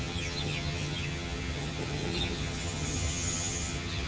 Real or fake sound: fake